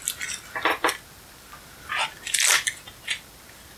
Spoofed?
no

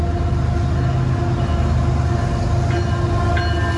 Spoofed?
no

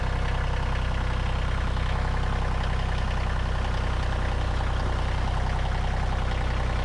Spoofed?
no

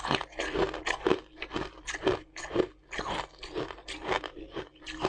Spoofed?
no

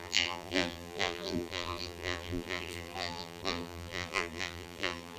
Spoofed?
yes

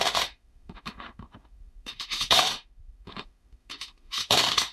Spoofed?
yes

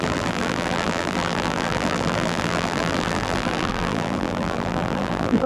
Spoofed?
yes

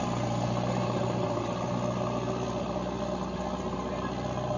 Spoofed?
no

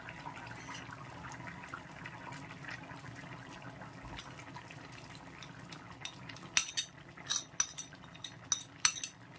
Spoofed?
no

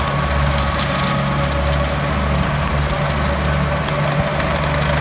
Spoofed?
no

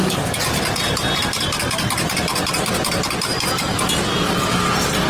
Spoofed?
no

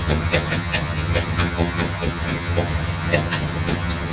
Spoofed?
yes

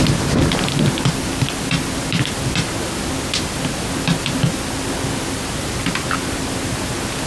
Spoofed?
no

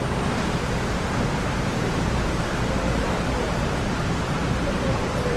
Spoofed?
yes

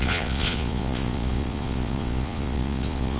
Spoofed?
yes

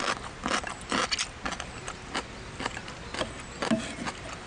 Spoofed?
no